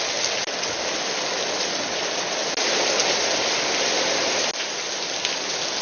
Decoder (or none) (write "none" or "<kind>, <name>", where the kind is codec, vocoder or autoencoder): none